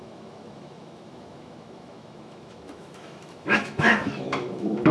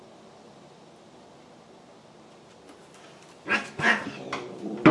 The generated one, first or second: first